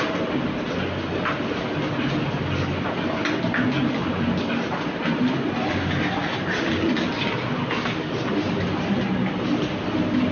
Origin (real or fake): real